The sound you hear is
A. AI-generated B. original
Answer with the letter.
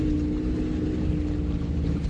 B